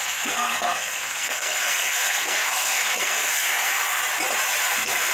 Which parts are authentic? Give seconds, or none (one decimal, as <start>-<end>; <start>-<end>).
4.0-4.6